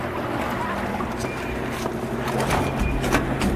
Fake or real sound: real